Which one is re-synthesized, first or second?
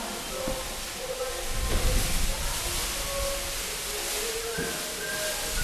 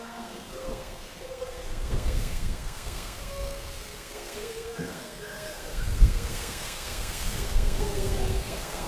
second